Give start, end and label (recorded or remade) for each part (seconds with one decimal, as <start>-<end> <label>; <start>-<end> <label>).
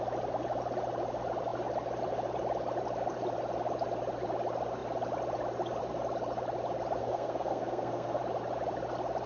0.0-7.0 recorded; 7.0-8.2 remade; 8.2-9.3 recorded